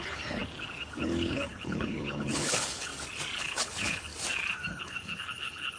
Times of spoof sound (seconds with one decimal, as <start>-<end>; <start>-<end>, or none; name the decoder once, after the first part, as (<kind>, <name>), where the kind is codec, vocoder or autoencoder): 0.0-0.4 (codec, HILCodec); 1.0-2.9; 3.4-4.1; 4.7-5.8